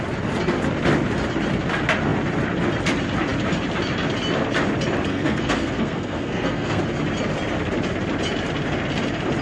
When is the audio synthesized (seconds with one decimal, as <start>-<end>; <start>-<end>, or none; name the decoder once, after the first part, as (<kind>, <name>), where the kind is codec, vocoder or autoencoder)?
5.1-6.8 (codec, SNAC)